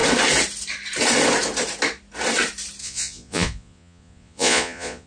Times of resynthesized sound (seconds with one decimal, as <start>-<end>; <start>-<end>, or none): 2.8-5.1